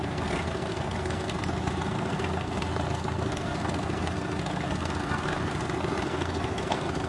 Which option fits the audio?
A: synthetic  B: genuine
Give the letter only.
A